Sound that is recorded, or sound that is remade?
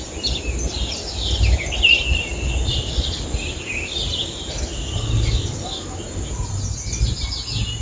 recorded